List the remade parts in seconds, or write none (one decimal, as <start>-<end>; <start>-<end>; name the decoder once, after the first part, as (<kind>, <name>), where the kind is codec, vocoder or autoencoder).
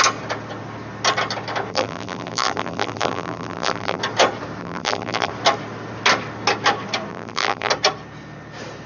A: 1.7-4.0 (vocoder, BigVGAN v2); 4.6-5.3; 7.1-7.7